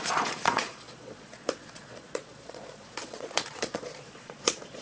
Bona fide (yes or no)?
no